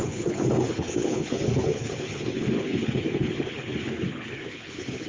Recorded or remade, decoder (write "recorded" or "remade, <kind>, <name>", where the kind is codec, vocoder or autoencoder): remade, codec, HILCodec